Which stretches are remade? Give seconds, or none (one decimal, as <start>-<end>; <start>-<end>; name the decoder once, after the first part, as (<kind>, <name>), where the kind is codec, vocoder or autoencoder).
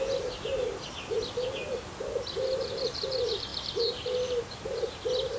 none